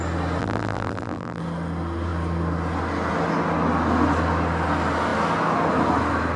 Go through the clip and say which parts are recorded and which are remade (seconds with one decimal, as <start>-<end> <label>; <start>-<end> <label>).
0.0-0.4 recorded; 0.4-1.4 remade; 1.4-6.4 recorded